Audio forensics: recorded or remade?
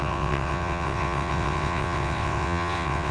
remade